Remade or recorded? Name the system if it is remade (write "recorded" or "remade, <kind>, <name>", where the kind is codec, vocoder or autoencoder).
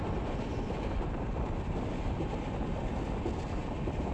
recorded